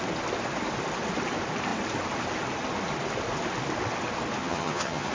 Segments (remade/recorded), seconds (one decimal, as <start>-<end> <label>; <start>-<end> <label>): 0.0-4.4 recorded; 4.4-5.1 remade